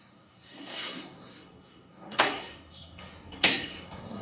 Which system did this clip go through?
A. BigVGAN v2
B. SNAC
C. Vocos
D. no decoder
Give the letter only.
B